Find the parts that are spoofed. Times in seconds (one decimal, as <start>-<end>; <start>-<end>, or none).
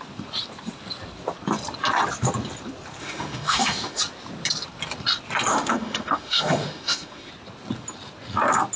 3.0-4.0; 5.5-7.3